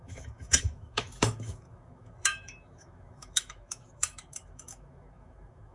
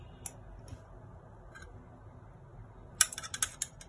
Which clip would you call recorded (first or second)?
second